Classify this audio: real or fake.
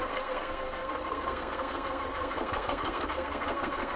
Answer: fake